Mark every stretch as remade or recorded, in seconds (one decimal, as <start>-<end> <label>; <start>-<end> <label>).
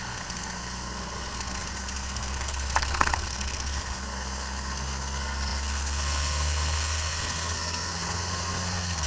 0.0-9.1 remade